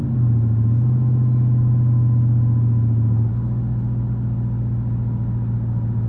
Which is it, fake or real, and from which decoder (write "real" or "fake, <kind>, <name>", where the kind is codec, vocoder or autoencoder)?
real